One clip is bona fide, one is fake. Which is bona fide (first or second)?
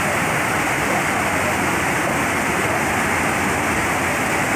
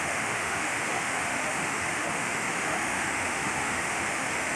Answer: first